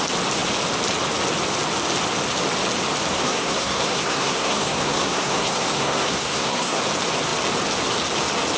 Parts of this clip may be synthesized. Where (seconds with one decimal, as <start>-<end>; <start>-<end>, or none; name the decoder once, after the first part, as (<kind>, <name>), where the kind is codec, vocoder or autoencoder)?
3.1-6.8 (codec, SNAC)

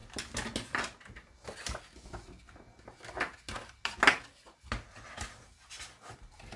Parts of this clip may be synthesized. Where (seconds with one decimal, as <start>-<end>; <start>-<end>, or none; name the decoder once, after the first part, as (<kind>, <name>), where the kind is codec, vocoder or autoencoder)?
none

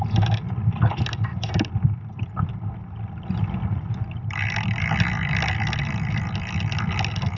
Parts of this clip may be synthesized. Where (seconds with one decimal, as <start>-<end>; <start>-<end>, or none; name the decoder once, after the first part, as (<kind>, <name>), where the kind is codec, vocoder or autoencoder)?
none

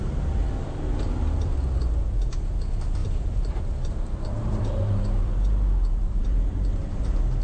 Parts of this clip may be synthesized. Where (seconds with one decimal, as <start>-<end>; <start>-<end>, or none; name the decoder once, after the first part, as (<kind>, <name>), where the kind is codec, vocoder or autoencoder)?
3.0-7.4 (vocoder, BigVGAN v2)

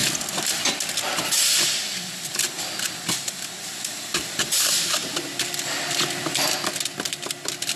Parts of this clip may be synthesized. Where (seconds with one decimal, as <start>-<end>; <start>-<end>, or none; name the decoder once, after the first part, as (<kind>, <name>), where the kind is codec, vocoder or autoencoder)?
none

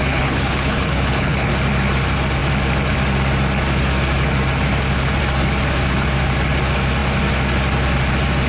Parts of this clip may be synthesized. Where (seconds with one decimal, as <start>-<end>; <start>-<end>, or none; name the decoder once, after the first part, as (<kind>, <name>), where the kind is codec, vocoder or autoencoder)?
0.0-1.5 (codec, HILCodec)

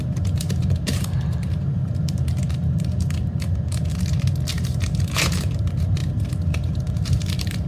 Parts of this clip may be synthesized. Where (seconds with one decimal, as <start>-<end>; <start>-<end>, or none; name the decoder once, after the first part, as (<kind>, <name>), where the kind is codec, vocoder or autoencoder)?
0.0-3.9 (vocoder, BigVGAN v2); 4.5-7.7